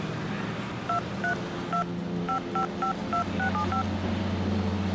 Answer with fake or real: real